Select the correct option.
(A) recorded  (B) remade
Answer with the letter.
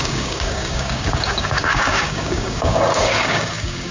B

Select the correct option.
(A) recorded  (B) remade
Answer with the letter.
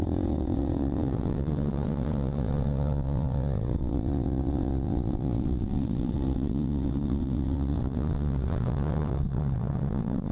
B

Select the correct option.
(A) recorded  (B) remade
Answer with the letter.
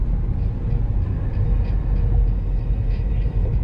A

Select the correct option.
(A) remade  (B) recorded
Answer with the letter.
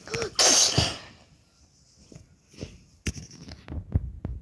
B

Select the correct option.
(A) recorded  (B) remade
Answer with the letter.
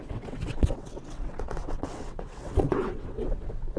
B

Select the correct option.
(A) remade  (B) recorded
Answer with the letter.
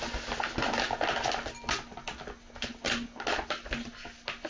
B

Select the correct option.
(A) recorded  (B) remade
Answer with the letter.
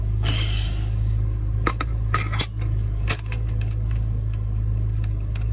B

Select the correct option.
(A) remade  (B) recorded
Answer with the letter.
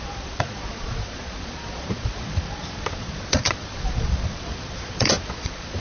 A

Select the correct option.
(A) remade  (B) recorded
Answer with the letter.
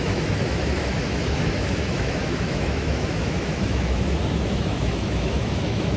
A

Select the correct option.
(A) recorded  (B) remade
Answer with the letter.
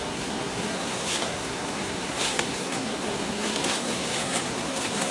B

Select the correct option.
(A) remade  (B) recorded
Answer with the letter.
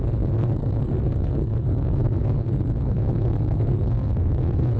A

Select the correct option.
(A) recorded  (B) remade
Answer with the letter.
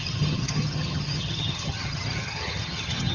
B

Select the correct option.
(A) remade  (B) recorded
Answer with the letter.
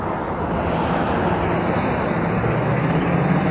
B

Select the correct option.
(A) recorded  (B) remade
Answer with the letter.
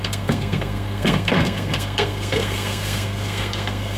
B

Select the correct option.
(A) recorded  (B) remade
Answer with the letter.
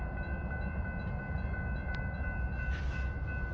A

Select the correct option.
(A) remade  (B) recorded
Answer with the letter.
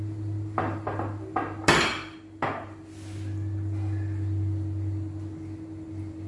B